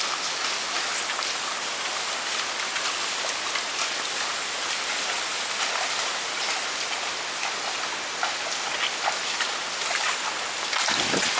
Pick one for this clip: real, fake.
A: real